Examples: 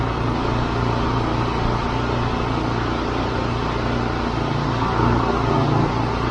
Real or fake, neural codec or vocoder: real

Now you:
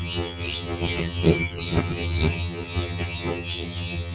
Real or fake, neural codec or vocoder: fake, vocoder, HiFi-GAN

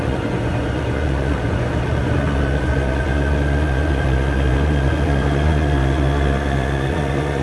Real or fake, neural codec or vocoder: fake, vocoder, Vocos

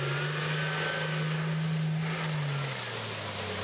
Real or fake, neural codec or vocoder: real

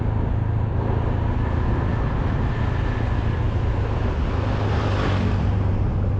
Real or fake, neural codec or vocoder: real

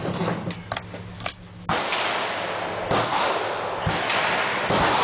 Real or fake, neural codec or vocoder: real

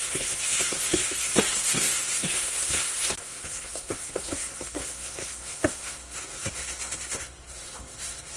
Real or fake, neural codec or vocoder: fake, codec, SNAC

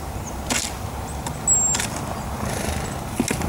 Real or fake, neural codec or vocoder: real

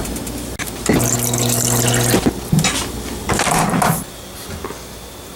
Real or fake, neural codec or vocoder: real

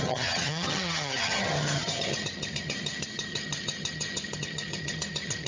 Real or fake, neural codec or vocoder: fake, vocoder, HiFi-GAN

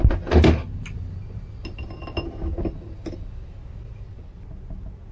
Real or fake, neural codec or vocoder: real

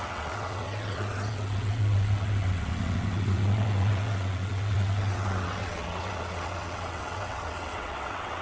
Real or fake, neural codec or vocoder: fake, vocoder, WaveNeXt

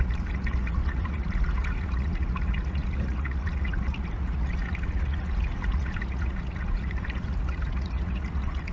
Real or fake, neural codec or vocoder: fake, vocoder, Vocos